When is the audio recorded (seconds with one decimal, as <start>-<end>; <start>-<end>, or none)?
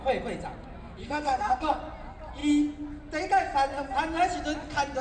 0.0-1.0; 1.8-5.0